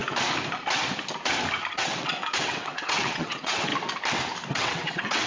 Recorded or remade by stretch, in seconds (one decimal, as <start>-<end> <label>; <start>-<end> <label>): 0.0-1.7 recorded; 1.7-3.7 remade; 3.7-4.5 recorded; 4.5-5.3 remade